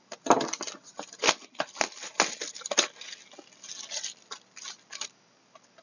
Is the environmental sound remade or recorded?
recorded